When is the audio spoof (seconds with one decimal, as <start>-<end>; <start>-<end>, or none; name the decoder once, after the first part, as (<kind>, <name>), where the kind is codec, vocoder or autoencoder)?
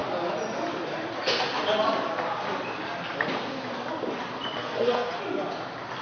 4.6-5.2 (codec, SNAC)